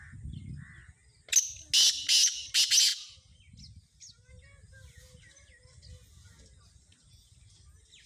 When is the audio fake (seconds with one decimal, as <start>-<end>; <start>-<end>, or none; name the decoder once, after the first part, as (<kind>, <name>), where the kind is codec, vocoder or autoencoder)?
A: none